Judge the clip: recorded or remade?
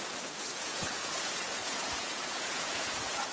remade